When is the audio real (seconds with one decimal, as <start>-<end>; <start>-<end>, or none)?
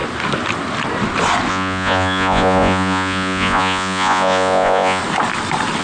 0.0-1.5; 5.0-5.8